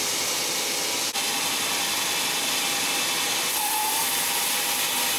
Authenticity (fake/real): real